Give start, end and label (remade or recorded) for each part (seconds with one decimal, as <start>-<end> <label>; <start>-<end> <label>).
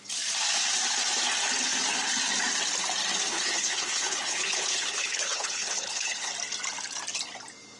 0.0-3.3 recorded; 3.3-6.3 remade; 6.3-7.8 recorded